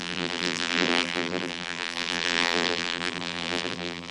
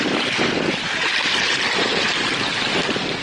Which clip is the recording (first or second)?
second